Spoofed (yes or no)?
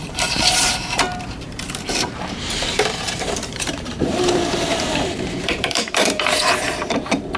yes